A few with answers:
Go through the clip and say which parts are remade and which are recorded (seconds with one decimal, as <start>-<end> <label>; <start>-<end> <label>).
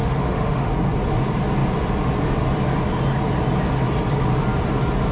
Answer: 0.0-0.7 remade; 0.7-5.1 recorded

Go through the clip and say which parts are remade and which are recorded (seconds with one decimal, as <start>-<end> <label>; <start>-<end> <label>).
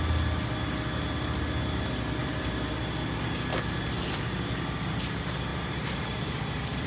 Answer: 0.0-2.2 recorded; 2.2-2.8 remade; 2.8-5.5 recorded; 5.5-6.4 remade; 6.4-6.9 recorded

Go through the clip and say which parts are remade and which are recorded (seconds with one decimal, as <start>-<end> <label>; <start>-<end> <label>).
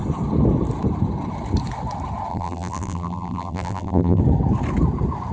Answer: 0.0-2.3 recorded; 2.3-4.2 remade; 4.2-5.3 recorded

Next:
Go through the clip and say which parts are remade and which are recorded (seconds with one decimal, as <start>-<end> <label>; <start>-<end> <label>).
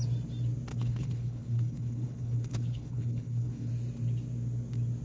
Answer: 0.0-0.7 recorded; 0.7-3.7 remade; 3.7-5.0 recorded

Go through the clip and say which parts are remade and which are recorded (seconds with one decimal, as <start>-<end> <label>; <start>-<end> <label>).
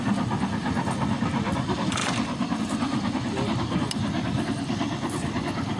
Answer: 0.0-5.8 recorded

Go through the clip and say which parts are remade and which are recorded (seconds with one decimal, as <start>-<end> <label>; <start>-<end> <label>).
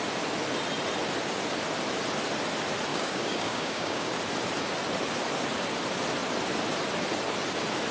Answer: 0.0-2.9 recorded; 2.9-4.1 remade; 4.1-7.9 recorded